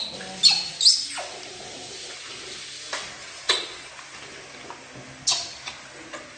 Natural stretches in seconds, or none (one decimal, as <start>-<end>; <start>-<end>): 0.0-3.2; 3.9-6.4